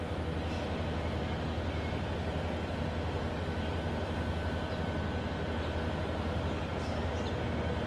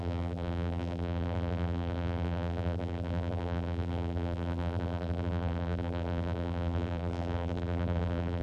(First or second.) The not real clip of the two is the second